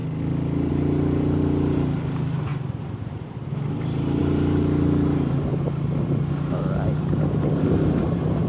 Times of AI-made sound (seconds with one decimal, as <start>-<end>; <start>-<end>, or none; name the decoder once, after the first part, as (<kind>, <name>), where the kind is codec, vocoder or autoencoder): 0.7-2.5 (vocoder, BigVGAN v2); 3.0-3.4; 4.2-5.5; 7.0-8.5